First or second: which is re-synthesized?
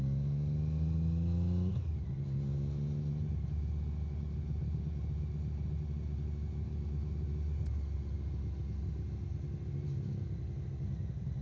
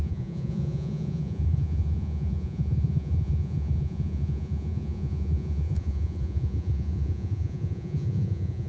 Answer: second